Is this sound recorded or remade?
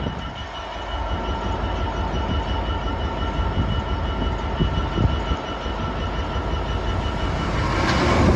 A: recorded